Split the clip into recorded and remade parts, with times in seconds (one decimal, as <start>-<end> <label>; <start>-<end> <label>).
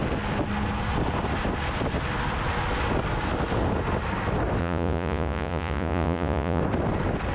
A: 0.0-4.6 recorded; 4.6-6.6 remade; 6.6-7.3 recorded